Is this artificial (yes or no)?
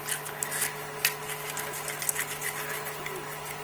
no